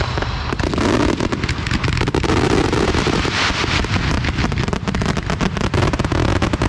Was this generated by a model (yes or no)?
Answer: no